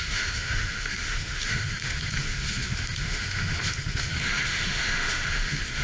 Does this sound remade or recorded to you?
remade